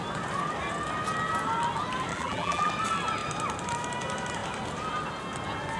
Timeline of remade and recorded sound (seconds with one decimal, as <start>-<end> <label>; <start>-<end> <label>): 0.0-2.1 recorded; 2.1-2.7 remade; 2.7-5.8 recorded